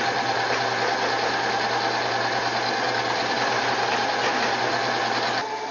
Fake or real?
real